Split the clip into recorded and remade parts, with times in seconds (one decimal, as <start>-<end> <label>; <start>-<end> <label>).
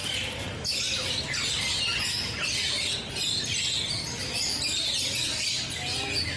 0.0-6.4 recorded